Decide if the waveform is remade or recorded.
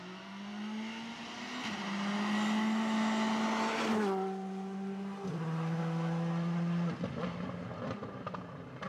recorded